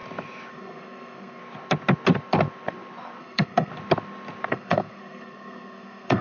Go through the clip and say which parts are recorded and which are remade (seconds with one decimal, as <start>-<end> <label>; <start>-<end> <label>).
0.0-0.5 recorded; 0.5-1.4 remade; 1.4-3.2 recorded; 3.2-3.7 remade; 3.7-4.5 recorded; 4.5-6.2 remade